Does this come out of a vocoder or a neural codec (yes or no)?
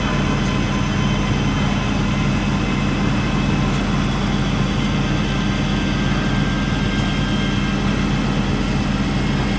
no